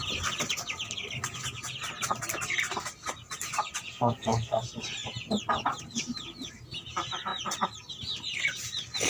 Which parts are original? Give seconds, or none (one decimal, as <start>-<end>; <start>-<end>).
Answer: 0.0-3.9; 4.6-9.1